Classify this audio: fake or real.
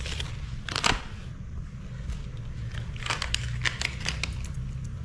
real